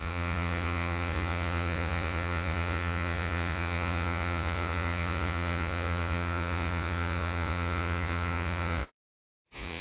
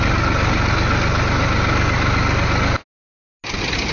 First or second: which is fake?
first